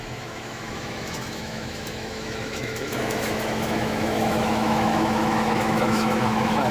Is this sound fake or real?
fake